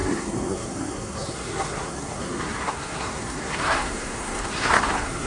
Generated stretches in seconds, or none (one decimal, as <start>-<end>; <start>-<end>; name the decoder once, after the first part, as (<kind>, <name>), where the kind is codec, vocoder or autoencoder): 0.0-5.3 (codec, SNAC)